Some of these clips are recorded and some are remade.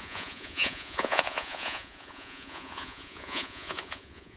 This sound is remade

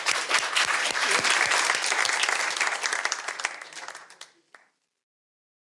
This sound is recorded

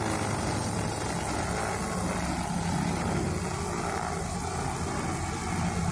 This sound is recorded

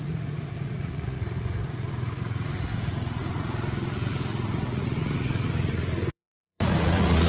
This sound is remade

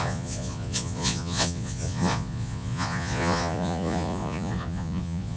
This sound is remade